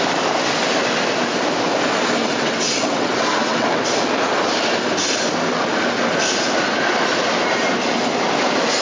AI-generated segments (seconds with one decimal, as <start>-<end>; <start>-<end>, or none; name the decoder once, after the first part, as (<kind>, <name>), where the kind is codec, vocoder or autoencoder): 2.2-3.8 (vocoder, WaveNeXt)